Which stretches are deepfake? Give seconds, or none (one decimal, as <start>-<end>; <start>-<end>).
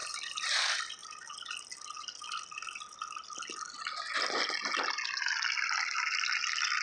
0.0-0.6